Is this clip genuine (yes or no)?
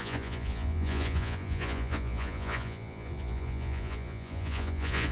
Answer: no